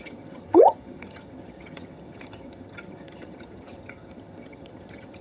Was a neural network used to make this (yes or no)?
yes